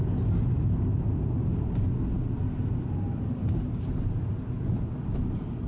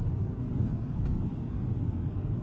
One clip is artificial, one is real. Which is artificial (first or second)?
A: second